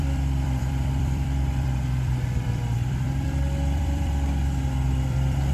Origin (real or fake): fake